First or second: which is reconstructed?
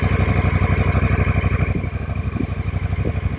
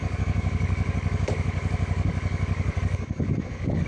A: second